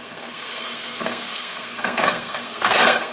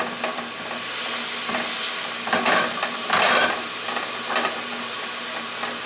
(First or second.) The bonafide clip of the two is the second